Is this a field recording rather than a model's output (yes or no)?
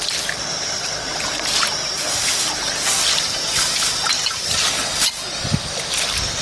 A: yes